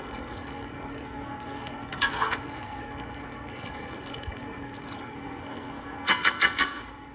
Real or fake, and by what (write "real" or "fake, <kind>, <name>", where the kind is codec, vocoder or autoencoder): fake, codec, SNAC